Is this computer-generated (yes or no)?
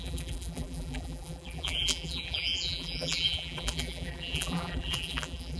yes